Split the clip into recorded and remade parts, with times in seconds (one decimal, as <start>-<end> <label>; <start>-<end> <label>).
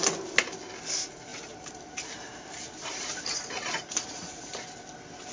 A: 0.0-1.3 recorded; 1.3-4.5 remade; 4.5-5.3 recorded